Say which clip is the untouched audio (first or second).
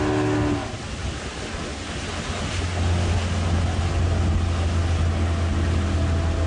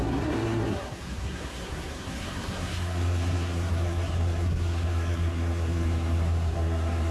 first